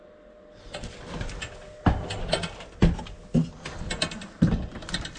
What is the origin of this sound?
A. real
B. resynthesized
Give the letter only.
A